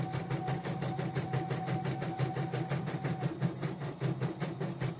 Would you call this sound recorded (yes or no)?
yes